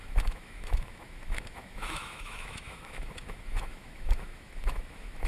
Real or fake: fake